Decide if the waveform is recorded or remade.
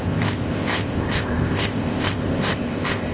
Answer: remade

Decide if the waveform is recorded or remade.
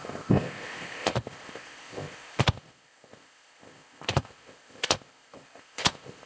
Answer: remade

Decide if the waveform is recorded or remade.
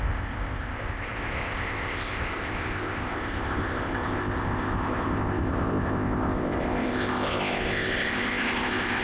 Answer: remade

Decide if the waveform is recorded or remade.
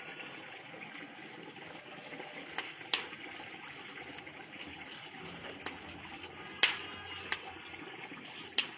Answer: recorded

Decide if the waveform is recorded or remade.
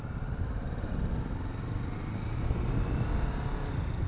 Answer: recorded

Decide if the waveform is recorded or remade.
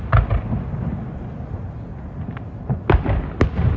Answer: recorded